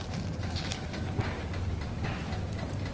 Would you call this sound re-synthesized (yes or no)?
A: no